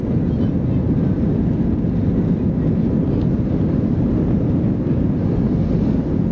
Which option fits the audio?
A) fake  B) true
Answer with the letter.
B